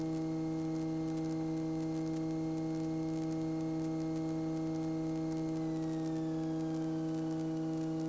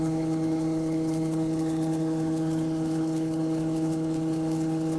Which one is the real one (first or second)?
first